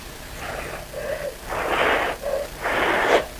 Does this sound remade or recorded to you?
recorded